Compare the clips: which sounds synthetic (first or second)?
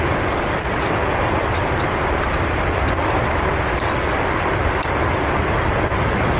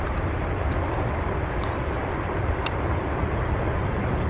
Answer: second